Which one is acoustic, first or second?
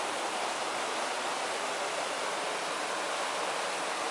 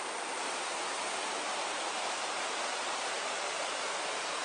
first